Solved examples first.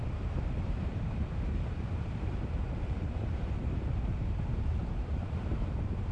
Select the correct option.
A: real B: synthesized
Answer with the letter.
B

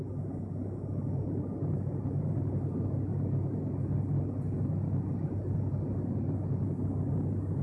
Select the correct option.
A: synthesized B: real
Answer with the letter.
B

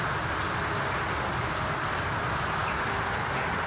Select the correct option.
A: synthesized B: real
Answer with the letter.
B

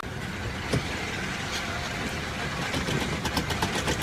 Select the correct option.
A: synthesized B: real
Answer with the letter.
B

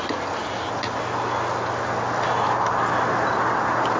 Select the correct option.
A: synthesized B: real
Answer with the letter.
B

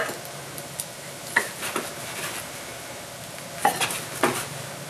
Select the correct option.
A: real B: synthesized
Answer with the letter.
A